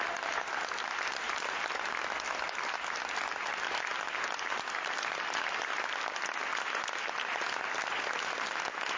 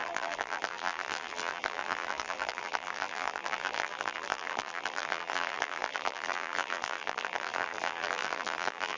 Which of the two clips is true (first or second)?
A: first